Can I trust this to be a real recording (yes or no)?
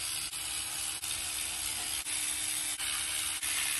yes